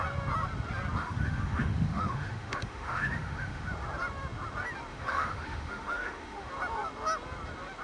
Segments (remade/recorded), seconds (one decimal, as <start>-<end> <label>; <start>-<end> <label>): 0.0-1.0 recorded; 1.0-3.7 remade; 3.7-4.9 recorded; 4.9-6.5 remade; 6.5-7.8 recorded